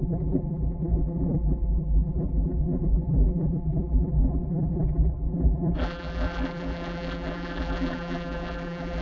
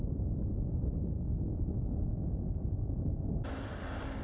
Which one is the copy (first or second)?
first